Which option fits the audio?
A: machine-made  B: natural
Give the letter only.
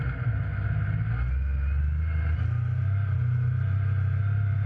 B